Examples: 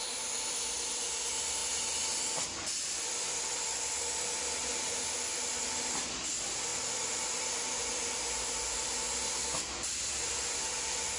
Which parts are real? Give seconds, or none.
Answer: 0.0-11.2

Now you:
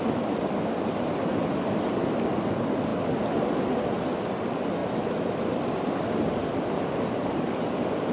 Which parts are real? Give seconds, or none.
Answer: 0.0-8.1

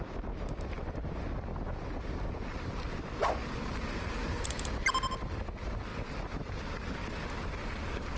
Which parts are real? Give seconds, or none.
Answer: 0.0-8.2

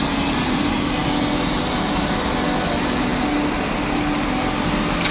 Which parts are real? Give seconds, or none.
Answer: 0.0-5.1

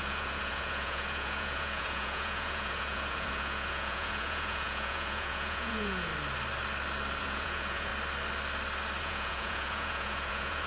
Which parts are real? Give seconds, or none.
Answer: 6.1-7.2; 7.9-9.0